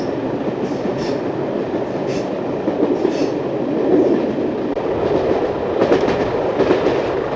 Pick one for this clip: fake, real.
real